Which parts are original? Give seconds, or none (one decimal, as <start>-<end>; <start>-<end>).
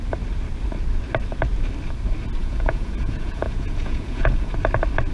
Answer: 0.0-2.4; 4.5-5.1